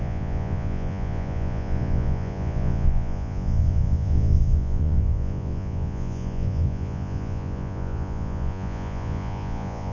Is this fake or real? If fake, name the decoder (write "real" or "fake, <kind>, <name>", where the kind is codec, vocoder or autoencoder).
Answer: fake, vocoder, Vocos